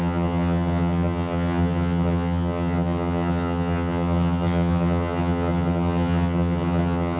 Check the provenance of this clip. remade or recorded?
remade